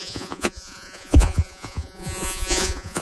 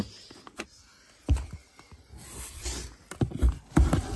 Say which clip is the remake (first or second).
first